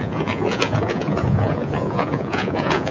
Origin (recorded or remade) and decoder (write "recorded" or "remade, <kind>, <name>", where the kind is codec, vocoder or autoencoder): remade, vocoder, Vocos